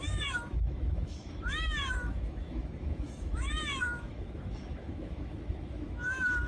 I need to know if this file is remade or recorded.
remade